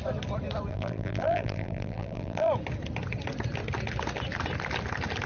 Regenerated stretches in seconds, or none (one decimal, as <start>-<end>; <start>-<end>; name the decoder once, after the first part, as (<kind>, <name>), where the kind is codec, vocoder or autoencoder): 0.7-2.5 (vocoder, BigVGAN v2)